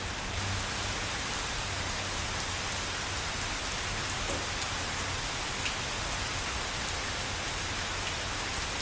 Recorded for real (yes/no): yes